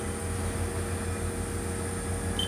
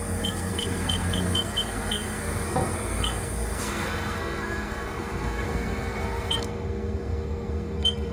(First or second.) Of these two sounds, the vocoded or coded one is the second